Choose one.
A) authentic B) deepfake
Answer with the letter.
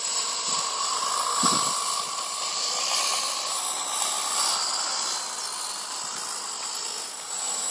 A